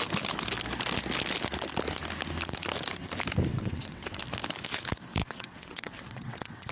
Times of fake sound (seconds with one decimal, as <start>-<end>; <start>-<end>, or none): 3.5-4.2; 5.2-6.7

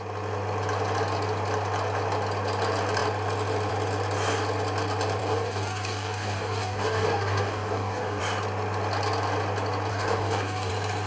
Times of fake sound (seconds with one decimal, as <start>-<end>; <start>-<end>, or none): 5.2-8.2; 9.9-10.7

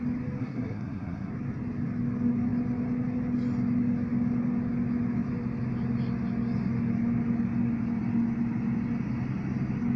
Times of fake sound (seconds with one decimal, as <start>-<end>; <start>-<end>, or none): 0.4-1.3

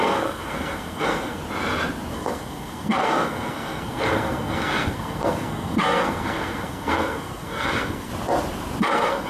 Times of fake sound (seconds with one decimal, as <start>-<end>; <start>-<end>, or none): 0.0-1.4; 2.1-8.1; 8.8-9.3

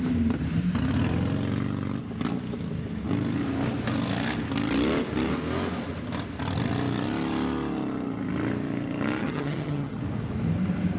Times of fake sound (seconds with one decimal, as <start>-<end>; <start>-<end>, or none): 9.2-10.0

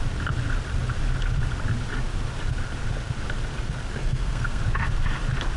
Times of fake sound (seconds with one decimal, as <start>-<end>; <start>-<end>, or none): 4.0-4.6